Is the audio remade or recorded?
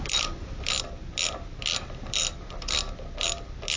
recorded